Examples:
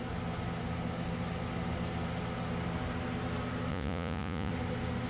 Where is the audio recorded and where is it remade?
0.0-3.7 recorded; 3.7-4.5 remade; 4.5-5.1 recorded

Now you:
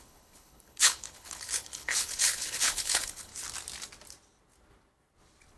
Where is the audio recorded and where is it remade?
0.0-3.3 remade; 3.3-5.6 recorded

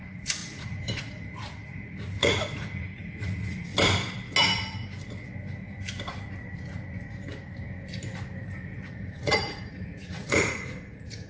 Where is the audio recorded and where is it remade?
0.0-3.7 remade; 3.7-8.9 recorded; 8.9-11.3 remade

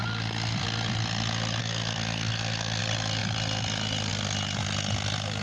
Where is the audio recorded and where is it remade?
0.0-1.6 recorded; 1.6-2.8 remade; 2.8-5.4 recorded